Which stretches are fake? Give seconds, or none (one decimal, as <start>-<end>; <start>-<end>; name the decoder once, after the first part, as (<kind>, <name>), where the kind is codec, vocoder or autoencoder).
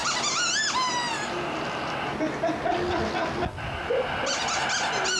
none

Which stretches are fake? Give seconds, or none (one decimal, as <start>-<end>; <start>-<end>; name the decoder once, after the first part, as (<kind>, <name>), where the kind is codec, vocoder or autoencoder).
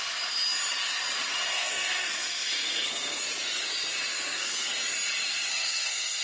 1.5-3.2 (codec, SNAC); 4.1-4.7; 5.5-6.2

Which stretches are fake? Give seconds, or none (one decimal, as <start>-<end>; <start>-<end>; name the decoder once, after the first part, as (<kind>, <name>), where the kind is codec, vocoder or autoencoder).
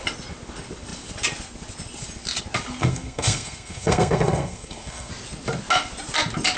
2.8-5.1 (codec, SNAC)